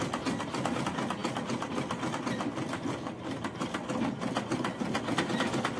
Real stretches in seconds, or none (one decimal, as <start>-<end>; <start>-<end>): 0.0-5.8